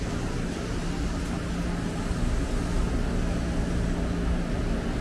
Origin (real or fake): real